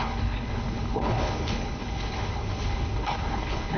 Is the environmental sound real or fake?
fake